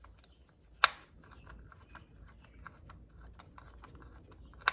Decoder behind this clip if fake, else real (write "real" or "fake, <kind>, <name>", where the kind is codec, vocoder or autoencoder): real